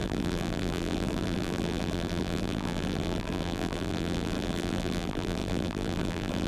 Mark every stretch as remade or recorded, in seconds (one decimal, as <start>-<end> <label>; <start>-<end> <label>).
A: 0.0-6.5 remade